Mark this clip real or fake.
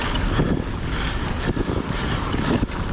real